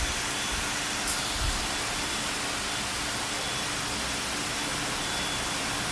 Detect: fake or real real